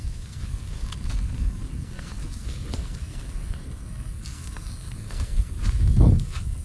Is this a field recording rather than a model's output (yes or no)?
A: no